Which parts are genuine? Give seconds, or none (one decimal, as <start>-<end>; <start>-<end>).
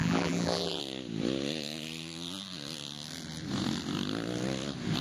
0.8-5.0